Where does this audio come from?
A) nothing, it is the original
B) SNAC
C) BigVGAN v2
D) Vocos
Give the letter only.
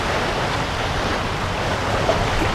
A